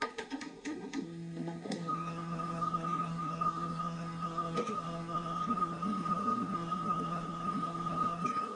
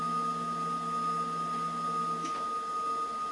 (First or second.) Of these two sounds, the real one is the second